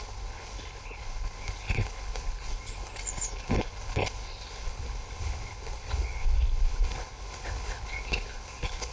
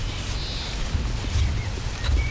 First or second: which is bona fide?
second